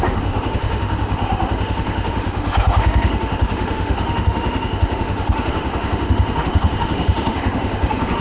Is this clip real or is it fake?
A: fake